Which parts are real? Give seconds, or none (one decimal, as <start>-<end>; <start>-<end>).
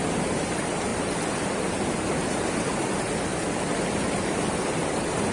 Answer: 3.3-3.9